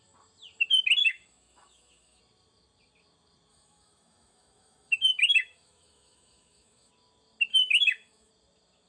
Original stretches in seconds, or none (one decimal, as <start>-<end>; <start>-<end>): 0.0-1.0; 2.2-3.5; 6.9-7.5; 8.3-8.9